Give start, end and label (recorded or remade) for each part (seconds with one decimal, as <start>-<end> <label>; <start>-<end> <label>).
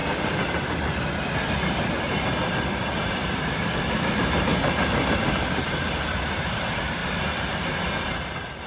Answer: 0.0-3.1 recorded; 3.1-7.0 remade; 7.0-8.0 recorded; 8.0-8.7 remade